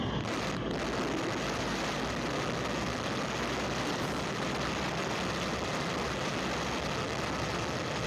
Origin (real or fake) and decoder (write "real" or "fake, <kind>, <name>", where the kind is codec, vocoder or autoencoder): real